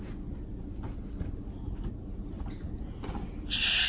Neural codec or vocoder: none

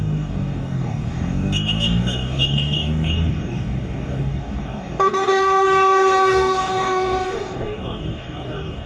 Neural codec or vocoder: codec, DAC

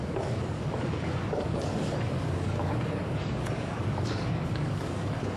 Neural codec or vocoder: codec, DAC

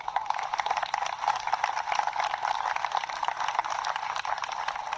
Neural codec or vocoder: none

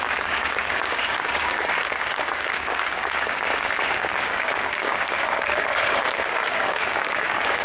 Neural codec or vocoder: codec, DAC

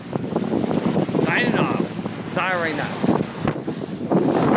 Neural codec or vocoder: none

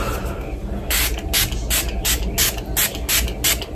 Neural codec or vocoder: none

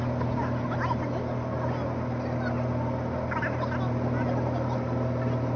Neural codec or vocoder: none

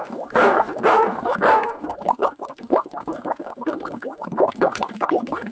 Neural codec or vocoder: codec, DAC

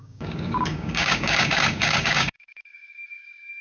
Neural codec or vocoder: codec, DAC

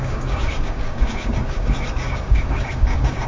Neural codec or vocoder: codec, DAC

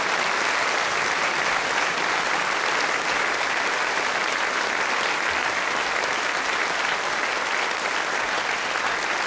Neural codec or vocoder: none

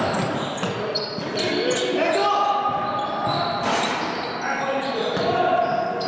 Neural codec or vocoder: none